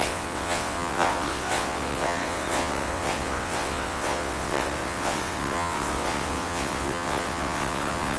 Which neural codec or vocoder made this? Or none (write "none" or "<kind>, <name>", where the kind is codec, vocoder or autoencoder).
vocoder, WaveNeXt